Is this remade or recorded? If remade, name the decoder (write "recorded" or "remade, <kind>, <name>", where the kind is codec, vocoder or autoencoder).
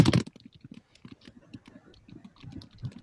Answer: recorded